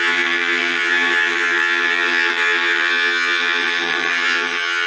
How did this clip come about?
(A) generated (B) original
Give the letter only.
A